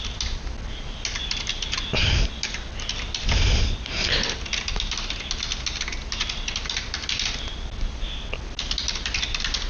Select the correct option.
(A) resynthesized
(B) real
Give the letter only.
B